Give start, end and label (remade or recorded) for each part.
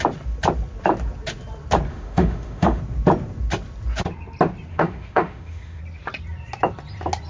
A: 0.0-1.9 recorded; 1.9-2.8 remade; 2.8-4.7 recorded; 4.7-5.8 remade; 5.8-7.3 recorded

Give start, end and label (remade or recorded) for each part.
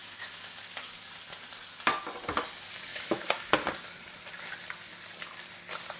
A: 0.0-0.6 remade; 0.6-2.9 recorded; 2.9-3.5 remade; 3.5-6.0 recorded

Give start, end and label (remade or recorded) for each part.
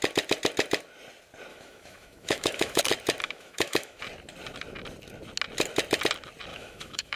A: 0.0-1.5 recorded; 1.5-2.8 remade; 2.8-3.2 recorded; 3.2-4.0 remade; 4.0-6.5 recorded; 6.5-7.2 remade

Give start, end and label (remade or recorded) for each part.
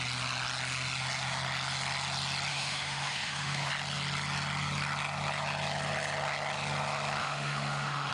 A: 0.0-2.5 recorded; 2.5-3.7 remade; 3.7-7.2 recorded; 7.2-8.1 remade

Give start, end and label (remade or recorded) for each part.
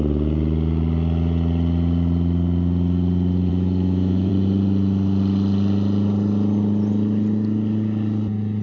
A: 0.0-3.5 recorded; 3.5-4.3 remade; 4.3-8.6 recorded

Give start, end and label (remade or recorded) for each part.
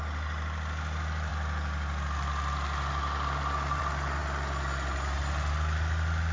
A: 0.0-6.3 recorded